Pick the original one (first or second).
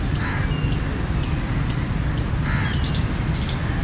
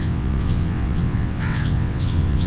first